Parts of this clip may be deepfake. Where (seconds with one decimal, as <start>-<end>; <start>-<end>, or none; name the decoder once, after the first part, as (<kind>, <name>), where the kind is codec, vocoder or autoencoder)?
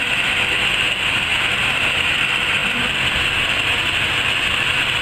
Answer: 1.3-1.8 (vocoder, BigVGAN v2)